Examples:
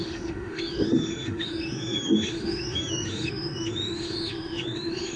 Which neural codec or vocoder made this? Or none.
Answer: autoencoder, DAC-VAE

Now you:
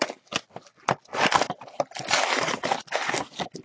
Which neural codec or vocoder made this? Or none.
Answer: none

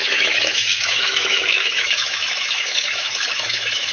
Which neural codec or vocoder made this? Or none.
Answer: autoencoder, DAC-VAE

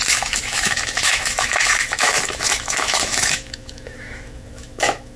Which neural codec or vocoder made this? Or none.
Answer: autoencoder, DAC-VAE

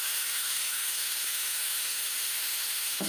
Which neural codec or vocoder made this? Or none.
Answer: autoencoder, DAC-VAE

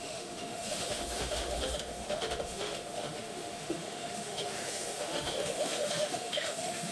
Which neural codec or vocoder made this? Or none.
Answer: autoencoder, DAC-VAE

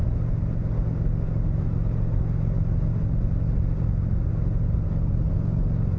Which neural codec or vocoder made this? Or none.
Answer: none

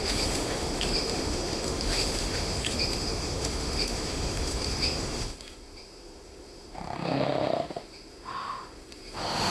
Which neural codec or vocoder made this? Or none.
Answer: autoencoder, DAC-VAE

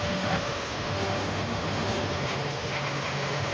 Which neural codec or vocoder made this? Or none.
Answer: autoencoder, DAC-VAE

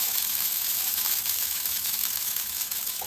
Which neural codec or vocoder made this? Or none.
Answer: autoencoder, DAC-VAE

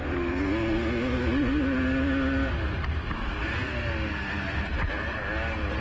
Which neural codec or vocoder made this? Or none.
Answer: none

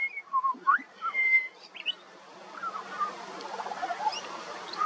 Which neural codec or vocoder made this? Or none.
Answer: none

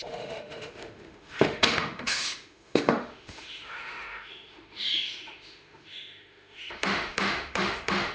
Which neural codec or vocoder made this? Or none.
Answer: autoencoder, DAC-VAE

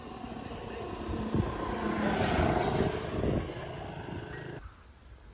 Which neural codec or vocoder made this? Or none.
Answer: none